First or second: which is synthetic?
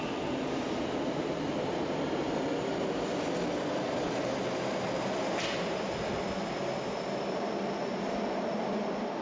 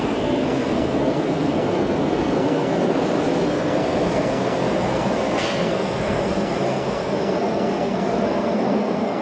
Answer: second